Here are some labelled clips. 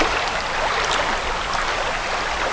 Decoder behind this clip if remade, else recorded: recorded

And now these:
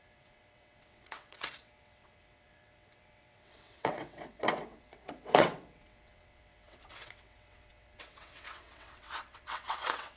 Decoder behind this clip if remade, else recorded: remade, vocoder, WaveNeXt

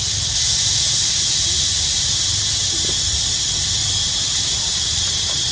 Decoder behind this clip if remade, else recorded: recorded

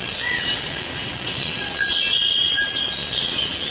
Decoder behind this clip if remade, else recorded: remade, vocoder, WaveNeXt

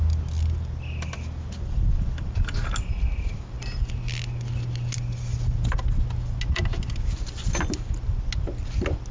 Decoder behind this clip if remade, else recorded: recorded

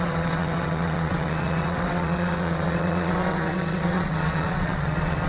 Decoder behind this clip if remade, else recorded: remade, vocoder, WaveNeXt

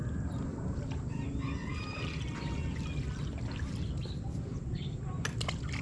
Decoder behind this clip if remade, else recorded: recorded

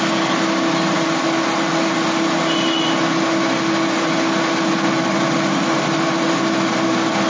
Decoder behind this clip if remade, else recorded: recorded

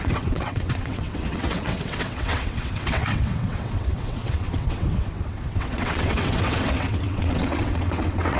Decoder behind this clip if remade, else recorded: remade, vocoder, WaveNeXt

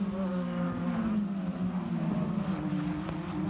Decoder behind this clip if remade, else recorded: recorded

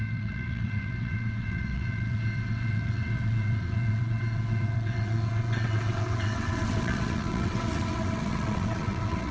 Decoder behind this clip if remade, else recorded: remade, vocoder, WaveNeXt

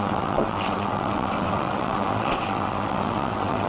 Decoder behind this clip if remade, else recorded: remade, vocoder, WaveNeXt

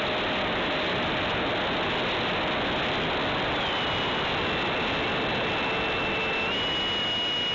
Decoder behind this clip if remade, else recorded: recorded